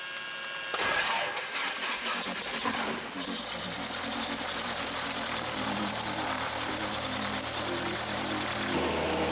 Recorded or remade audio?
recorded